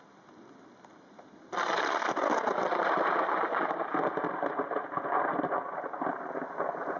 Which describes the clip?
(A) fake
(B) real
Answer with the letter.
B